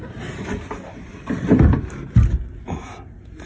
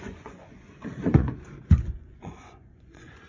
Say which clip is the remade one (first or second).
second